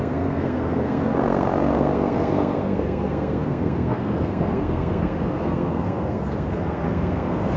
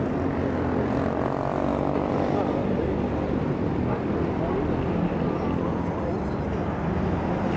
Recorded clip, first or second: second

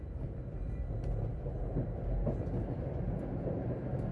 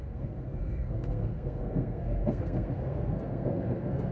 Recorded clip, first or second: first